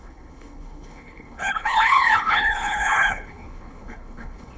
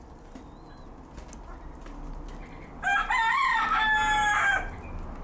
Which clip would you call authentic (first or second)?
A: second